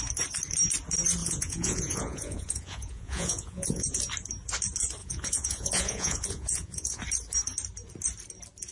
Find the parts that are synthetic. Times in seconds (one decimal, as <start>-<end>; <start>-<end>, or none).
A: 1.2-4.0; 5.0-7.0